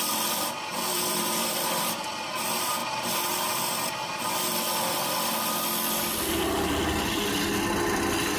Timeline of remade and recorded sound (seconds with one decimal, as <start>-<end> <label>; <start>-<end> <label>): 0.0-0.9 recorded; 0.9-2.1 remade; 2.1-8.4 recorded